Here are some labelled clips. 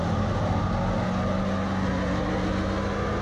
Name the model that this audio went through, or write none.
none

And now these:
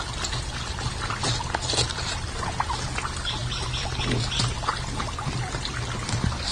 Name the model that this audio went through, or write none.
none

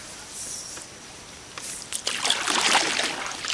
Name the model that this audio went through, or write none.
none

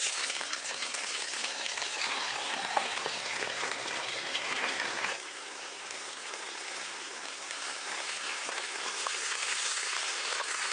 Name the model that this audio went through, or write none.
codec, SNAC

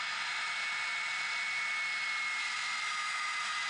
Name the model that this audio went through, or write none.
none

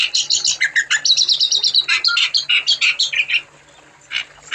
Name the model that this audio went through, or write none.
none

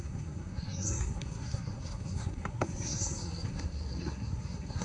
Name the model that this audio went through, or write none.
codec, SNAC